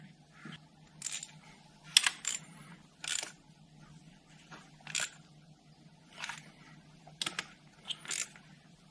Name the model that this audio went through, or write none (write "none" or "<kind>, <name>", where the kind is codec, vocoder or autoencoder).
none